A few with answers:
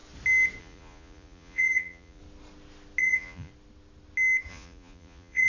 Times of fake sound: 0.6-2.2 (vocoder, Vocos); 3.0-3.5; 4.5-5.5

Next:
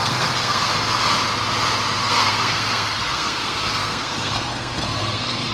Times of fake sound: 0.0-0.7 (codec, SNAC); 2.0-5.5

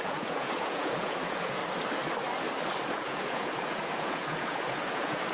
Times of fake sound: 0.0-1.6 (vocoder, Vocos); 2.9-5.3

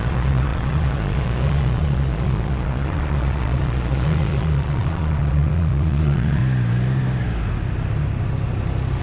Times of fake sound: 0.0-6.4 (vocoder, Vocos)

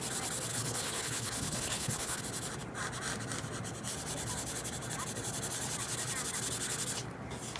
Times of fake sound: 0.5-2.2 (codec, HILCodec)

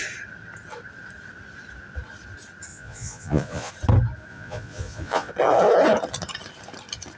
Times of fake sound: 2.7-3.7 (vocoder, Vocos); 4.3-5.3

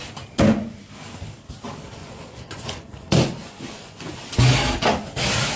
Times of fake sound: 2.0-4.3 (vocoder, Vocos)